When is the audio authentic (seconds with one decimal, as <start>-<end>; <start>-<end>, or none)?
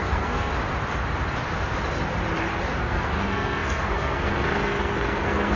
0.5-2.6